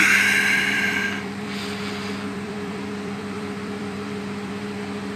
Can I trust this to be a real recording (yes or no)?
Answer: no